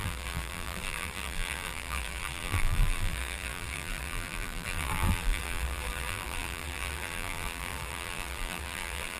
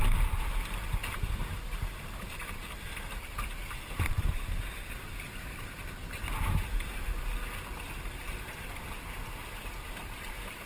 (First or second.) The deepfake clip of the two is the first